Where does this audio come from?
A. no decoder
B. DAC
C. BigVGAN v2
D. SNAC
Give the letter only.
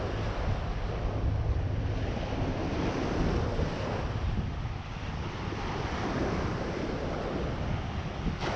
A